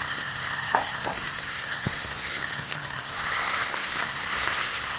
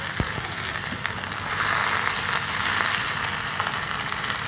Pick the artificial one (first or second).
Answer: first